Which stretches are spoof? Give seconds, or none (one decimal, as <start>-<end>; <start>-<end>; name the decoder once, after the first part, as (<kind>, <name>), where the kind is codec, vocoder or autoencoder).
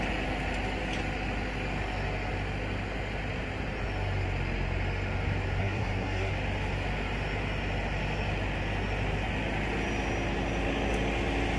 5.6-6.3 (codec, SNAC)